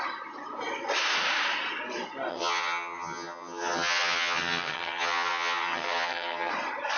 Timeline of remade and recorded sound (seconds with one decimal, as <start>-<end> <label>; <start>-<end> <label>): 0.0-2.3 recorded; 2.3-6.5 remade; 6.5-7.0 recorded